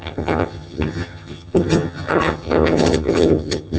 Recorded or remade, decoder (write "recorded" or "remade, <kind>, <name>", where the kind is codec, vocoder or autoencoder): remade, vocoder, HiFi-GAN